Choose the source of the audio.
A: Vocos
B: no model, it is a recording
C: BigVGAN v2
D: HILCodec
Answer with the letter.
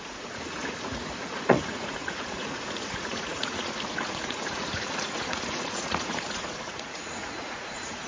A